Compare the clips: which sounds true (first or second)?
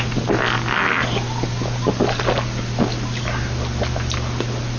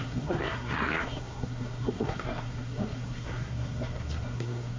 first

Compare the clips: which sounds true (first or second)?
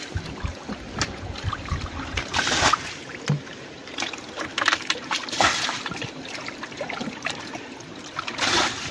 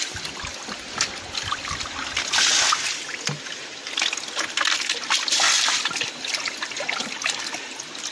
second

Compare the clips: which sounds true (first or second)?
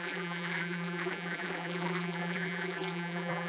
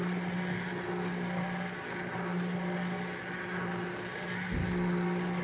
second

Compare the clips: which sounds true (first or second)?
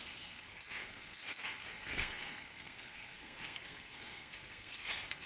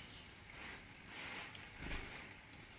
second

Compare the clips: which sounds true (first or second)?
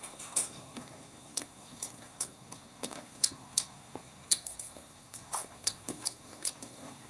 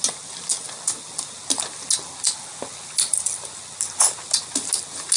second